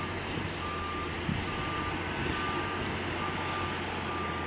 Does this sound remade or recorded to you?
recorded